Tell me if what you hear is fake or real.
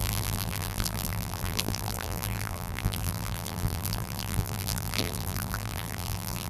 fake